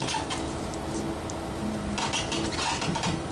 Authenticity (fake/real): real